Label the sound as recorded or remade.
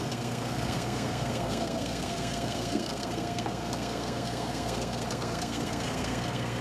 remade